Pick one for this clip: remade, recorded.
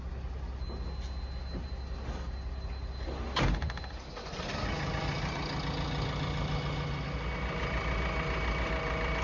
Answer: recorded